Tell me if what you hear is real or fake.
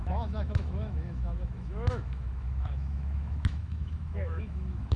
fake